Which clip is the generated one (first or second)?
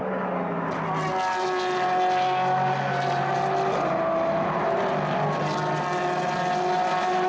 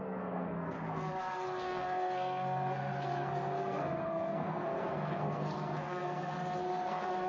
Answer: second